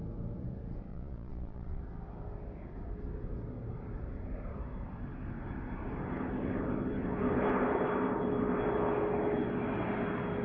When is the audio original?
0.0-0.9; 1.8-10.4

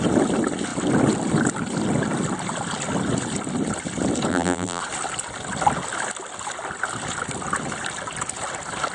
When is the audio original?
0.0-4.3; 4.8-8.9

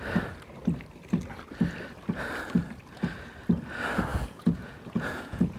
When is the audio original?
0.0-4.1

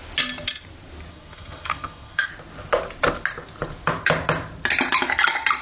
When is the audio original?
0.0-1.1; 2.3-5.6

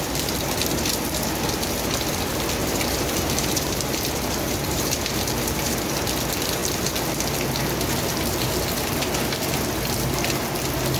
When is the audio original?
0.0-2.6; 5.7-11.0